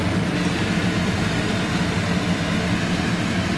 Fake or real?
real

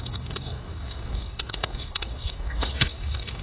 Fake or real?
fake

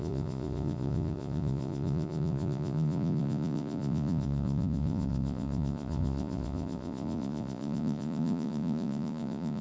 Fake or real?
fake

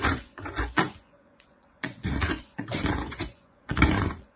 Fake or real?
fake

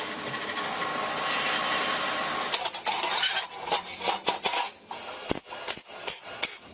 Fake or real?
real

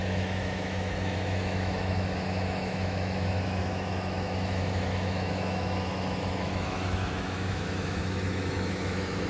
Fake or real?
fake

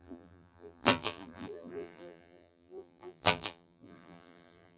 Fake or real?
fake